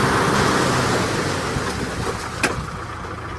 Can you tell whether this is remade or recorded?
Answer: recorded